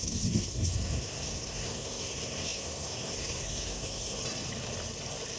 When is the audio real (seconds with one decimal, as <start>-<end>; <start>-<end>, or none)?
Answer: 4.2-5.4